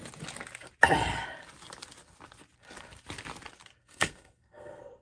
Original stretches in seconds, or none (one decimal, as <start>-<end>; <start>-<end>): 0.0-3.8